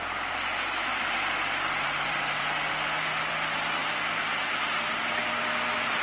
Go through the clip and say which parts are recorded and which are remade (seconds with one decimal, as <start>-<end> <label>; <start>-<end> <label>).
0.0-0.9 recorded; 0.9-2.6 remade; 2.6-6.0 recorded